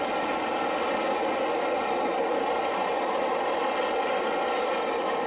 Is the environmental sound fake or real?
real